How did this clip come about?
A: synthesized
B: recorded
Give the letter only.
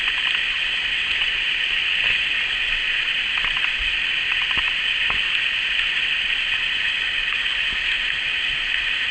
B